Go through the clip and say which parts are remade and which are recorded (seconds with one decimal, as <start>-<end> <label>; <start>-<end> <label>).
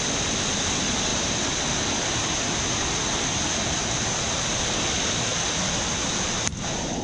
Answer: 0.0-7.0 recorded